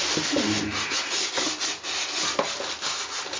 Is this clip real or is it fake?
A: real